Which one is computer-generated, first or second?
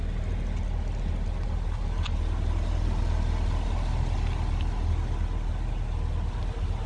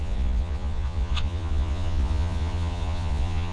second